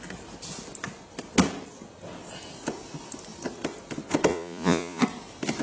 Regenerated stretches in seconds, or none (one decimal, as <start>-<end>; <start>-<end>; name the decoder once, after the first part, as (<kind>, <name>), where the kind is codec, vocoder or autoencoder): 4.3-5.0 (vocoder, Vocos)